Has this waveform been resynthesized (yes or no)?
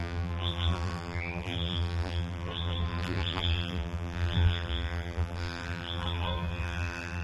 yes